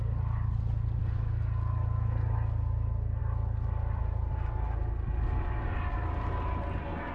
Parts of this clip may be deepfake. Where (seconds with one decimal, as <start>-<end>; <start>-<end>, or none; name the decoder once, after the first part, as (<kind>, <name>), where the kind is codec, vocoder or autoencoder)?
none

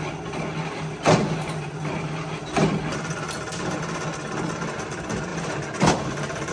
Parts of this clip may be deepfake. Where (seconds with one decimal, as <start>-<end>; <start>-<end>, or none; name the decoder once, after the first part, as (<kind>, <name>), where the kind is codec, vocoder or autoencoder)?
5.3-6.5 (vocoder, BigVGAN v2)